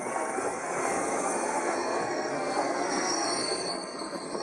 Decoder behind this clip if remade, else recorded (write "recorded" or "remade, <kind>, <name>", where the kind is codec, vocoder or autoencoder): remade, codec, SNAC